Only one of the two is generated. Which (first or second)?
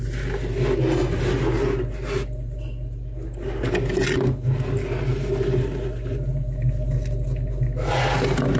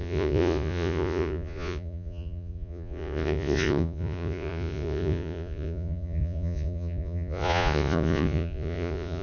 second